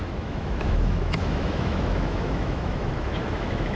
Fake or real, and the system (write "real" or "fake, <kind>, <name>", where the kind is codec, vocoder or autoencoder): fake, autoencoder, DAC-VAE